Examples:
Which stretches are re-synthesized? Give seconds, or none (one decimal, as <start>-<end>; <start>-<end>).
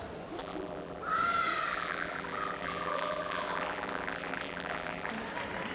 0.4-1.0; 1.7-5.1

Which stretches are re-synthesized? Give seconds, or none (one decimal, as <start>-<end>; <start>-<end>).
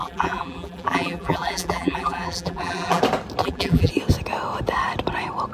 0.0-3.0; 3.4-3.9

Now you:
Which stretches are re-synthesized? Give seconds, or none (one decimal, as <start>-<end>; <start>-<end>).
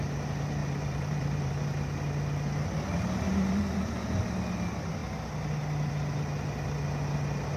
0.6-1.5; 3.3-4.2